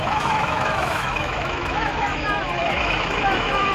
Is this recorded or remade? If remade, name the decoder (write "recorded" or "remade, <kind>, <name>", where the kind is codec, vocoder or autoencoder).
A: remade, autoencoder, DAC-VAE